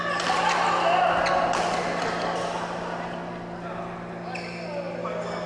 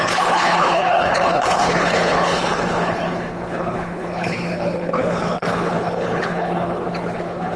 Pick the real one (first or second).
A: first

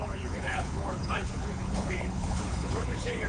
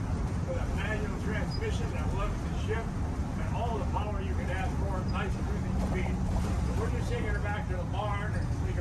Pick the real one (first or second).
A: second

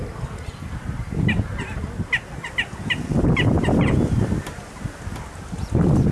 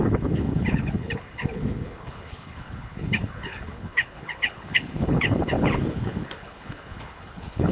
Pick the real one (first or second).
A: first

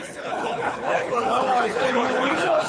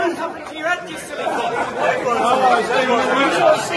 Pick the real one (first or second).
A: second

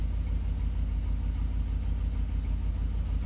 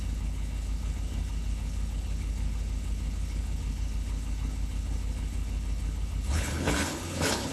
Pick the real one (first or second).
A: first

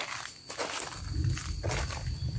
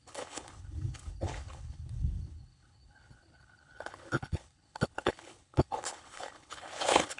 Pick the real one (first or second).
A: first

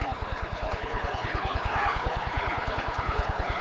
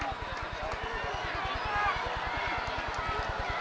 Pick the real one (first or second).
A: second